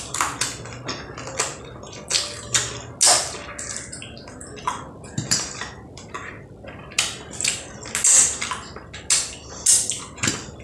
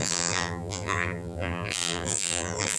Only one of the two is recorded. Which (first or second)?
first